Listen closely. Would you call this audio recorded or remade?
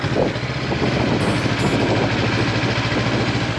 recorded